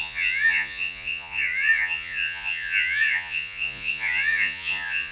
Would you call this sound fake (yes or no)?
yes